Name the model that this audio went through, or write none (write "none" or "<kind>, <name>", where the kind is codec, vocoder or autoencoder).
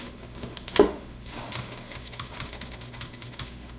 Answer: autoencoder, DAC-VAE